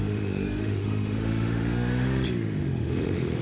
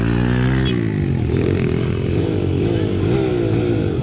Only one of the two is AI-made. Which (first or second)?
first